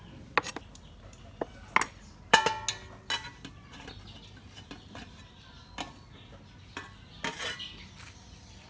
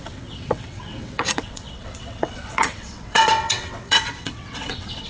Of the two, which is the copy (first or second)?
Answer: second